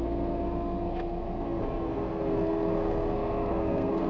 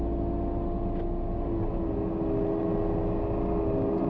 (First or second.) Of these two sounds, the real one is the second